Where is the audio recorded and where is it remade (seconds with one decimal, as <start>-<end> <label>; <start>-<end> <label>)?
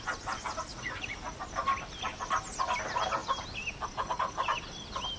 0.0-0.7 recorded; 0.7-1.4 remade; 1.4-5.2 recorded